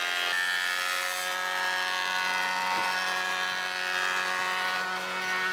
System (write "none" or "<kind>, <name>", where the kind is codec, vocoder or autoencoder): none